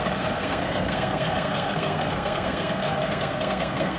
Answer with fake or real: fake